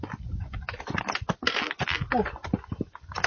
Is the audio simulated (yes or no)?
no